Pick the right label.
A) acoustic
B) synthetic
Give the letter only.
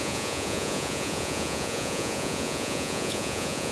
B